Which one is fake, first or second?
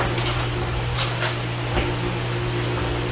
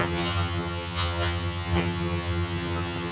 second